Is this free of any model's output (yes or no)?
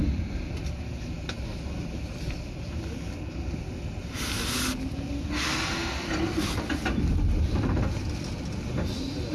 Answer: yes